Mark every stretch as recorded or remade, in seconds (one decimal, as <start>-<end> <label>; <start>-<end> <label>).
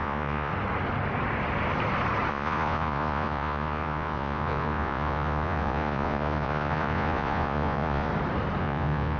0.0-0.5 remade; 0.5-2.3 recorded; 2.3-8.1 remade; 8.1-8.6 recorded; 8.6-9.2 remade